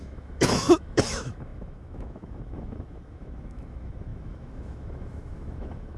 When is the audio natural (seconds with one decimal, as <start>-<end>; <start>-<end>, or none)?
none

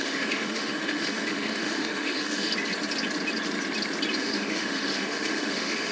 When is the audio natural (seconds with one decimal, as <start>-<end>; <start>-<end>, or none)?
2.5-4.2

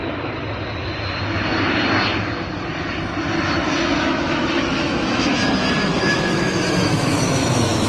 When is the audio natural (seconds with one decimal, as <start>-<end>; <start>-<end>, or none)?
0.0-4.0; 5.4-6.1

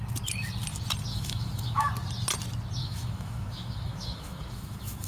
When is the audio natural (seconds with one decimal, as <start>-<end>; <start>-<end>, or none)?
0.0-1.1; 1.9-2.8